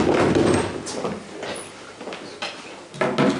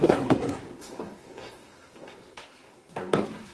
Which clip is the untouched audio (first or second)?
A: first